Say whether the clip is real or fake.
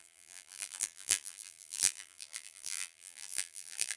fake